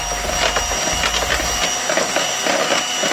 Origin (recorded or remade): recorded